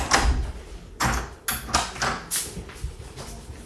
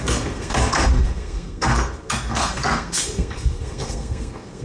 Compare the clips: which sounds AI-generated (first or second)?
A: second